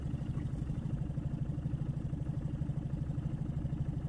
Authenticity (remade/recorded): recorded